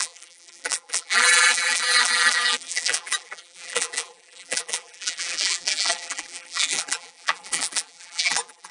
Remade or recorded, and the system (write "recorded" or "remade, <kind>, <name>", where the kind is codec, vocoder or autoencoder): remade, vocoder, BigVGAN v2